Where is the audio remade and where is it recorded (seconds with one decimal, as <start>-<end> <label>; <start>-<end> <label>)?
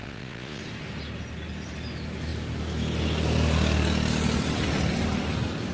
0.0-0.6 remade; 0.6-5.7 recorded